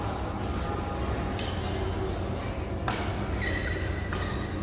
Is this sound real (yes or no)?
yes